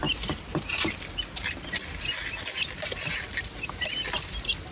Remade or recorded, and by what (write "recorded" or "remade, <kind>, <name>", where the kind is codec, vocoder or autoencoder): recorded